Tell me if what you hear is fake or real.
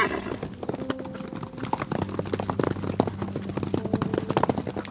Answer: real